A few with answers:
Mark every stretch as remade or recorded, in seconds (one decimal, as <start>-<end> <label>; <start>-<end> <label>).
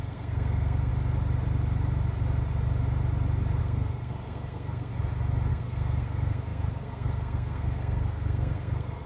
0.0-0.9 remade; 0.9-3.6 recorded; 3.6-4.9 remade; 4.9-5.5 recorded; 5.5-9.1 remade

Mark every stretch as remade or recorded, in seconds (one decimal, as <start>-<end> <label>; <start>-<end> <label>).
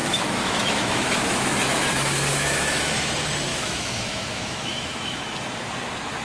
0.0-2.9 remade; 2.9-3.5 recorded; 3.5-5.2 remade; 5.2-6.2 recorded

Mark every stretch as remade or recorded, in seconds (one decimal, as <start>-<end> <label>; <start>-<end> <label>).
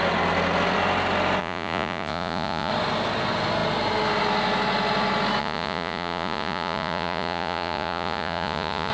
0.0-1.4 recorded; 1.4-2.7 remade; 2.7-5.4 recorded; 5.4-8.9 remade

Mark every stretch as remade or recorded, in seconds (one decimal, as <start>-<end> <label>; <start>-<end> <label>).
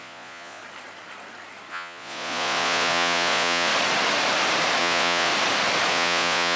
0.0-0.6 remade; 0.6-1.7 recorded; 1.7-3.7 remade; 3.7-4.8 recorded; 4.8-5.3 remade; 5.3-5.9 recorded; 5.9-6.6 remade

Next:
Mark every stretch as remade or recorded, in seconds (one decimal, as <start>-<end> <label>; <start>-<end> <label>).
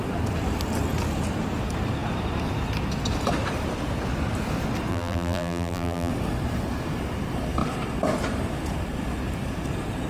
0.0-4.9 recorded; 4.9-6.1 remade; 6.1-10.1 recorded